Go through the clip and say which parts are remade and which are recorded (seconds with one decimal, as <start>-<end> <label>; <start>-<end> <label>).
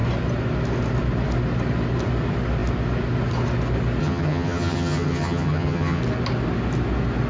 0.0-4.0 recorded; 4.0-6.0 remade; 6.0-7.3 recorded